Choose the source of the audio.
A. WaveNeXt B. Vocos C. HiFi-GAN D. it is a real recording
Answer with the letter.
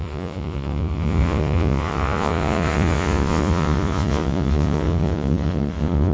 B